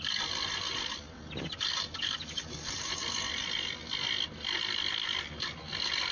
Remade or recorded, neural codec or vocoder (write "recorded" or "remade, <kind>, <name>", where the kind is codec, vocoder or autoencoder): recorded